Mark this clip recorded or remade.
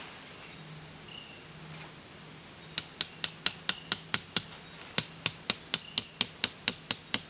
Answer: recorded